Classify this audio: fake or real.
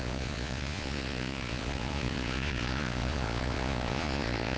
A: fake